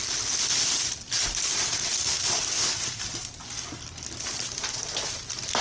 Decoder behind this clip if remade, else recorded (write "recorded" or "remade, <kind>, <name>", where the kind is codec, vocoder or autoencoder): recorded